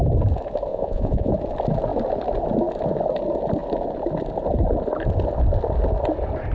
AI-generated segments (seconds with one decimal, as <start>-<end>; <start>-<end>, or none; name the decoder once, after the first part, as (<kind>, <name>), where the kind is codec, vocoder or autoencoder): 0.7-1.3 (vocoder, Vocos)